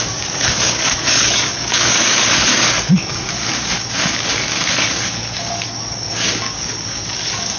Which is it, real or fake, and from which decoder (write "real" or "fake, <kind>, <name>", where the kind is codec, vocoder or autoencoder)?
fake, codec, DAC